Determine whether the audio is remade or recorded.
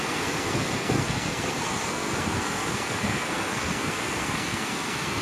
remade